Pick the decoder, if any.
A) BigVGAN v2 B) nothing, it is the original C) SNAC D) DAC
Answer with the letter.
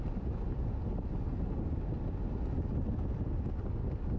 B